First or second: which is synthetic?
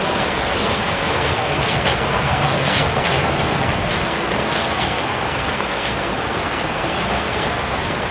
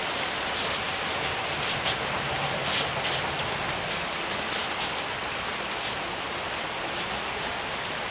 first